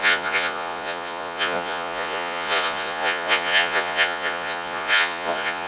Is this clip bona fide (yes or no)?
no